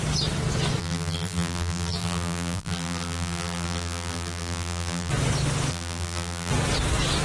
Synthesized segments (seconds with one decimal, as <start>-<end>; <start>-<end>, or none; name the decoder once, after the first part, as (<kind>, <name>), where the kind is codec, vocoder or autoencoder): 0.8-5.1 (vocoder, BigVGAN v2); 5.7-6.5